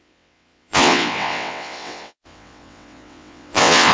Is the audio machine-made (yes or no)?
yes